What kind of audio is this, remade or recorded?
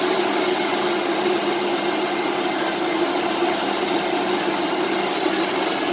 recorded